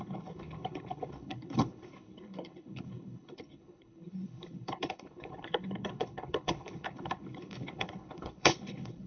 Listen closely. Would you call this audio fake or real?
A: fake